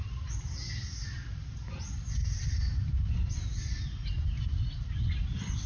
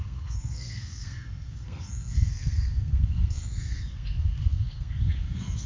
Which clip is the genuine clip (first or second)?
first